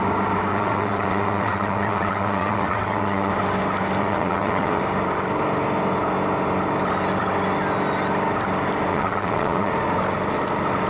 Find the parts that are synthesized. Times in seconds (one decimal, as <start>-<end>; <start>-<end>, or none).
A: 0.5-3.3; 4.0-4.8; 8.9-9.7